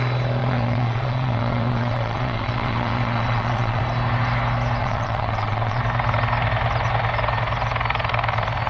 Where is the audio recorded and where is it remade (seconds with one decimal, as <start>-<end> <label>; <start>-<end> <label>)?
0.0-0.4 recorded; 0.4-3.8 remade; 3.8-4.8 recorded; 4.8-5.8 remade; 5.8-8.7 recorded